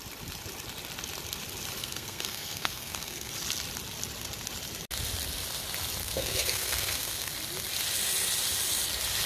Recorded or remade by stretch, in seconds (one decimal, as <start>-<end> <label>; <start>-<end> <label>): 0.0-1.8 recorded; 1.8-3.3 remade; 3.3-6.0 recorded; 6.0-7.3 remade; 7.3-9.3 recorded